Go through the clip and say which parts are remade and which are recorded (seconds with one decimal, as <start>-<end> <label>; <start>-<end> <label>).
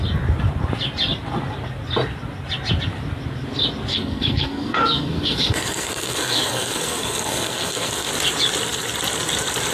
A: 0.0-3.9 recorded; 3.9-8.1 remade; 8.1-9.7 recorded